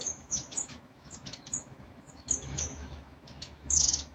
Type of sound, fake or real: fake